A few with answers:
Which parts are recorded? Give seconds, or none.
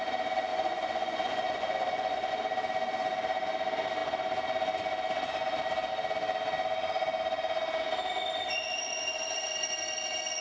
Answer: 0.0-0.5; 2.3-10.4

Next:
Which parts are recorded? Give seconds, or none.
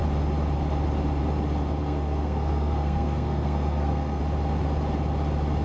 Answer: 0.0-1.8; 4.2-5.6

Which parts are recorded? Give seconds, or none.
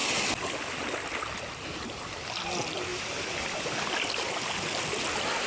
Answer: 0.0-2.9; 3.9-5.5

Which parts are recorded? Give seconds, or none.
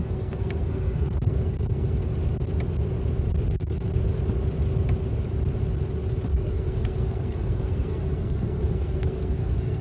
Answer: 2.1-3.5; 3.9-6.3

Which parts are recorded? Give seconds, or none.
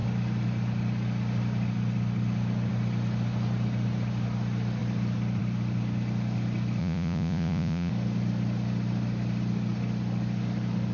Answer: 0.0-6.8; 7.9-10.9